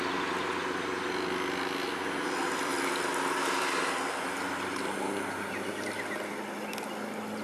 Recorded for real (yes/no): yes